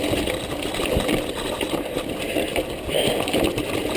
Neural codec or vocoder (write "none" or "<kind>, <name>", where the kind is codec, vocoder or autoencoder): none